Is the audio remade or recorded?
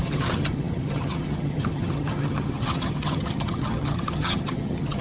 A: remade